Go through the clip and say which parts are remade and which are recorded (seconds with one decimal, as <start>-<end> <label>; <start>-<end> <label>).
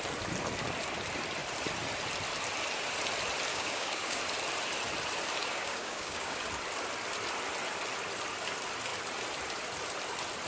0.0-3.5 recorded; 3.5-4.2 remade; 4.2-5.4 recorded; 5.4-6.4 remade; 6.4-10.5 recorded